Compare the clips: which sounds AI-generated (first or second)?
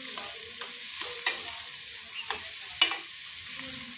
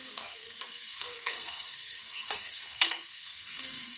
second